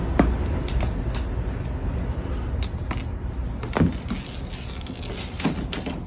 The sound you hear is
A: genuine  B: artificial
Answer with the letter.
A